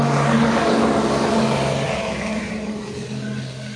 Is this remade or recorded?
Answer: remade